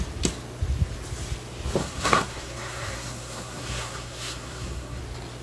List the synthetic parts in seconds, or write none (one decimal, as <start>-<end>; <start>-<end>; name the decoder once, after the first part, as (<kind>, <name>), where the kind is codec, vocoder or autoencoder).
1.8-5.0 (codec, SNAC)